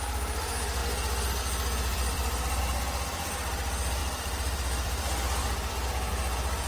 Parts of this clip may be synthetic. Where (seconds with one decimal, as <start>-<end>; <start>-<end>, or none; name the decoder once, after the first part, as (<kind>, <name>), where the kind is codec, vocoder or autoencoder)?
1.9-2.6 (vocoder, BigVGAN v2); 4.0-6.1